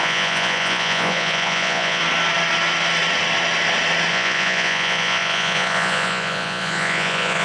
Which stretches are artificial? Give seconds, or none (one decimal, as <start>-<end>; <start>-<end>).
0.0-2.0; 4.1-7.4